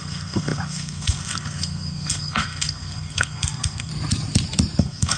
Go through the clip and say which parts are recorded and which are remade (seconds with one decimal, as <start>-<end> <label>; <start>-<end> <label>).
0.0-3.9 remade; 3.9-4.8 recorded; 4.8-5.2 remade